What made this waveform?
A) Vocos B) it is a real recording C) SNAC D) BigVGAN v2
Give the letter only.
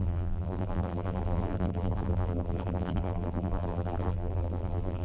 D